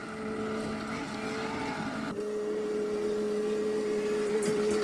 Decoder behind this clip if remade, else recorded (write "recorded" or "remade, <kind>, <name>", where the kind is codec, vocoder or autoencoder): recorded